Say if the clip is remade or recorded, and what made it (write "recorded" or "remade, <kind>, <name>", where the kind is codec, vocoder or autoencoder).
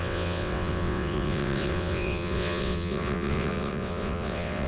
remade, vocoder, WaveNeXt